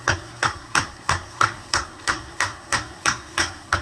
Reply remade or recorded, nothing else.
remade